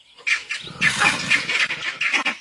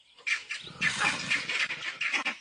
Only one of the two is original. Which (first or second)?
first